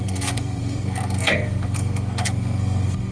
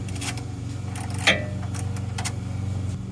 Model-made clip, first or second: first